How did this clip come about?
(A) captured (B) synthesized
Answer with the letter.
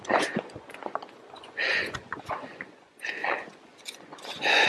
B